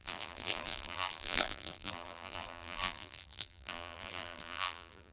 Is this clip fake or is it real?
fake